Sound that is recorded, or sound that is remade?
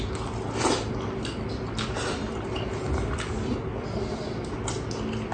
recorded